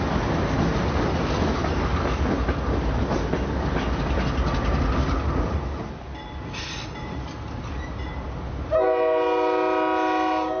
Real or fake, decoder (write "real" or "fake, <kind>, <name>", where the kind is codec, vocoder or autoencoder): real